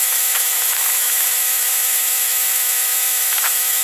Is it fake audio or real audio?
fake